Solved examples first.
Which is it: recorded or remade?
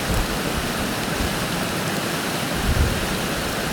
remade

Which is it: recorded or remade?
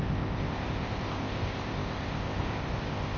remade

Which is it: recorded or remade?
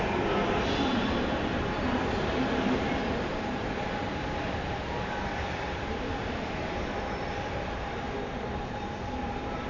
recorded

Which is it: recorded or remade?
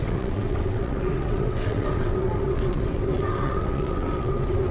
remade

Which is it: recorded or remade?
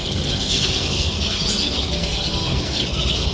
remade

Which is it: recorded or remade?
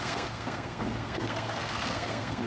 remade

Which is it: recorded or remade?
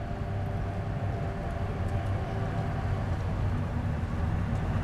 recorded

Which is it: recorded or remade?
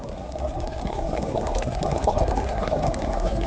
remade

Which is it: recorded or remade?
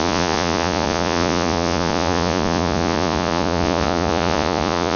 remade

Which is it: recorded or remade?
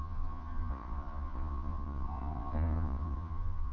remade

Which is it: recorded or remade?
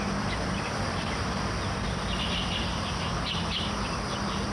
remade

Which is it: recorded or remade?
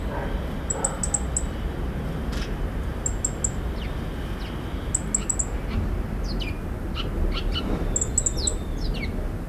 recorded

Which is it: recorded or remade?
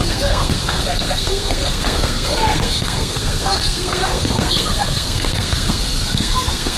remade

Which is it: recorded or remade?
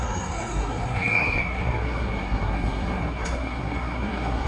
remade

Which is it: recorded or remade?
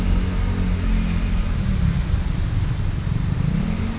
recorded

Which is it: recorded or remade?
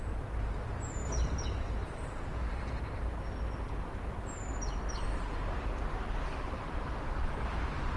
recorded